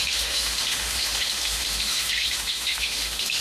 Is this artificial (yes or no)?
yes